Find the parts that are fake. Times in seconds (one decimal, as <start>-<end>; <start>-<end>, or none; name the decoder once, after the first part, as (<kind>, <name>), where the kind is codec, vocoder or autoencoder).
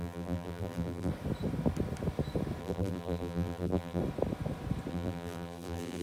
0.0-1.1 (vocoder, BigVGAN v2); 2.6-4.0; 4.9-6.0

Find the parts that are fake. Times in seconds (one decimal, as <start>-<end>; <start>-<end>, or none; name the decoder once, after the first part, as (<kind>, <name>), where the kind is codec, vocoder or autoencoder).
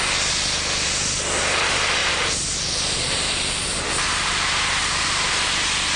2.0-5.3 (vocoder, BigVGAN v2)